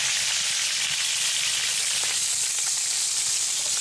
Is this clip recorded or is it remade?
recorded